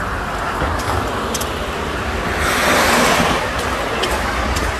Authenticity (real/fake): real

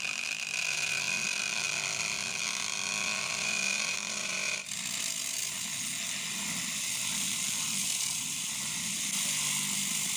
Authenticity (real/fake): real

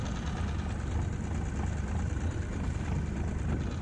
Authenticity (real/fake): real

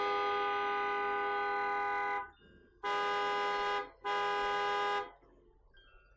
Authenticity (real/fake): real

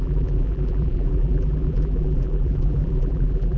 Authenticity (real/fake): fake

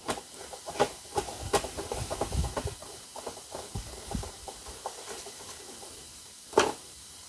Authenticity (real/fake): fake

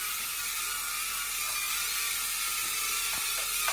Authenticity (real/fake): real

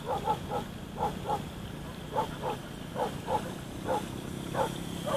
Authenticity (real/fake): real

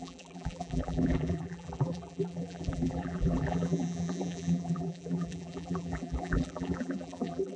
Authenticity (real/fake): fake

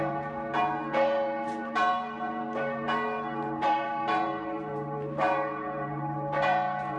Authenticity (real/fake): fake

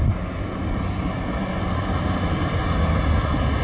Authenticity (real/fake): real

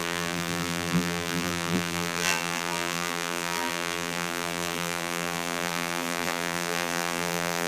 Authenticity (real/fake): fake